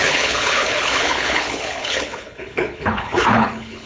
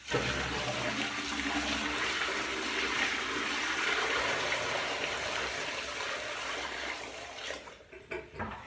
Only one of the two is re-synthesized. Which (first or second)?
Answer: first